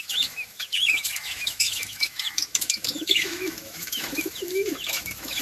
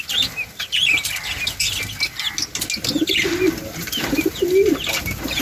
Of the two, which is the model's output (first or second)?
first